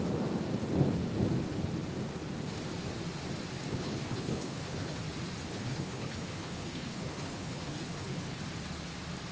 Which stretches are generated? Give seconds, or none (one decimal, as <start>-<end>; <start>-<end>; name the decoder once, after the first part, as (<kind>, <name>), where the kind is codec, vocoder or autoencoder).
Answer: 3.7-5.0 (codec, HILCodec); 5.5-8.4